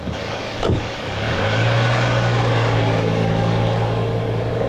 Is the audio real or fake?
fake